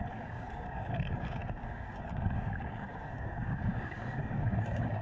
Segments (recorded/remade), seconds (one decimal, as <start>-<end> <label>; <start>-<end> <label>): 0.0-5.0 remade